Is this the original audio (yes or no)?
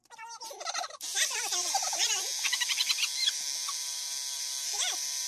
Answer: no